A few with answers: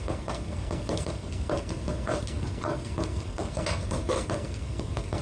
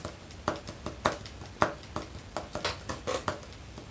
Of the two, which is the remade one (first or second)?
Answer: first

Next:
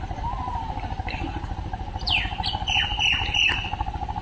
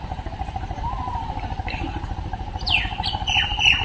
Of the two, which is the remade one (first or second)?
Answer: second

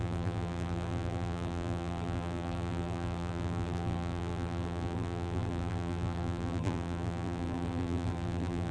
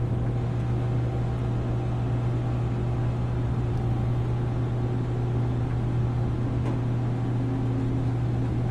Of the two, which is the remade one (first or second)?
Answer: first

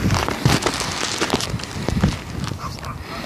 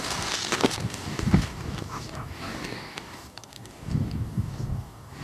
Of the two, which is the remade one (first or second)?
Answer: second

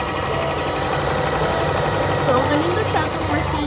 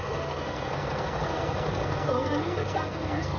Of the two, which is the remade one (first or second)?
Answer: second